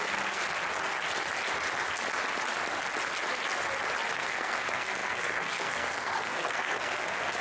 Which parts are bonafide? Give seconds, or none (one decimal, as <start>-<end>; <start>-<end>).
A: 0.4-4.1